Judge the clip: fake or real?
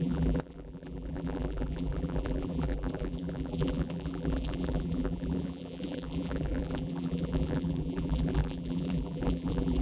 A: fake